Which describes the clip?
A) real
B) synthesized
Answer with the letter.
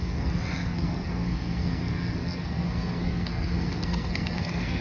B